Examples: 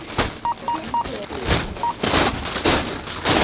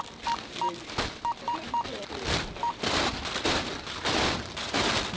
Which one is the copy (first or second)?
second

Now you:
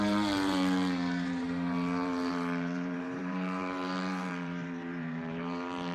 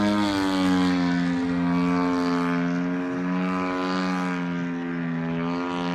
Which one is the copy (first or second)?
first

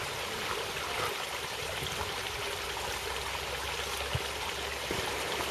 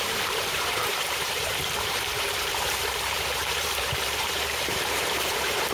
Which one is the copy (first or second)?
second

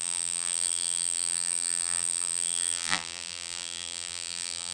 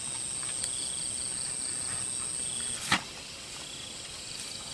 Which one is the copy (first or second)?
first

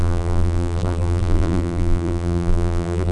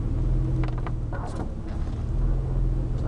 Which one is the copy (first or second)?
first